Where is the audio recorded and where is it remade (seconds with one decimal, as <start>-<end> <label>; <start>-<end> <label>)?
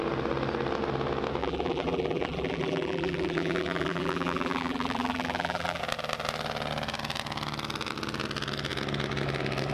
0.0-1.4 recorded; 1.4-5.8 remade; 5.8-9.7 recorded